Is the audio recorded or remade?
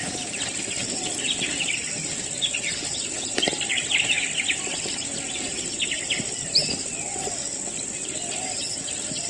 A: recorded